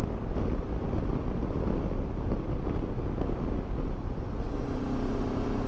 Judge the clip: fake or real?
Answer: real